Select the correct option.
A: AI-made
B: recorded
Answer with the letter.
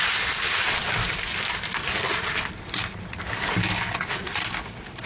B